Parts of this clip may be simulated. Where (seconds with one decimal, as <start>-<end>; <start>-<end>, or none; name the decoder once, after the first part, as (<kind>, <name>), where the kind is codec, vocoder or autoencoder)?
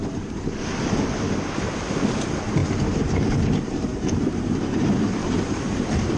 2.6-6.2 (vocoder, BigVGAN v2)